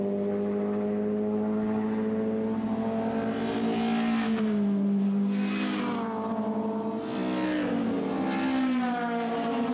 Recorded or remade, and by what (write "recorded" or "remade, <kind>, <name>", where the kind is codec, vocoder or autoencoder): recorded